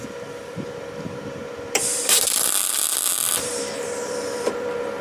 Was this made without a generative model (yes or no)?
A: no